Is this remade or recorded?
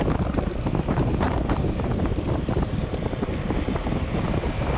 recorded